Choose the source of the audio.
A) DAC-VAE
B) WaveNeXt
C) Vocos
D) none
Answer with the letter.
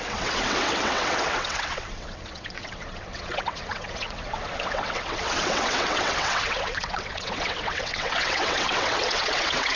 B